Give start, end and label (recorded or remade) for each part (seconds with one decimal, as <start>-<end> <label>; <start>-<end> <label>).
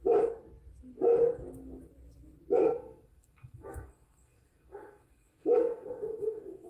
0.0-2.6 recorded; 2.6-6.7 remade